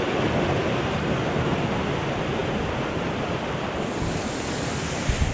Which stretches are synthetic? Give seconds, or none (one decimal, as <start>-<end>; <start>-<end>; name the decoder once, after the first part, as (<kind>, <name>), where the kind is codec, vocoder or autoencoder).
none